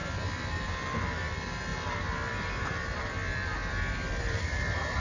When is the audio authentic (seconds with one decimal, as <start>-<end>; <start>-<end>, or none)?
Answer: none